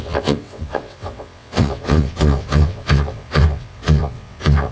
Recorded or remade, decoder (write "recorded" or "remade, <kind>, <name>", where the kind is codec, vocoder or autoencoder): remade, vocoder, WaveNeXt